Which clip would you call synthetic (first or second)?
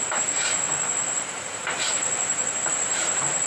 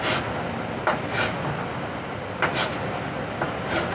first